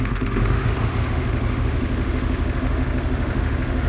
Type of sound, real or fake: fake